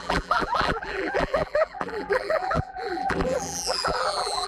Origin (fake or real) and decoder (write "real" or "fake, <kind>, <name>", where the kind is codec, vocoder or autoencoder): fake, vocoder, BigVGAN v2